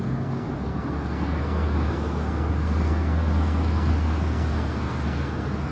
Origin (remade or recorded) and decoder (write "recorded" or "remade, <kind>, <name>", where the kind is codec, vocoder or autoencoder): remade, codec, SNAC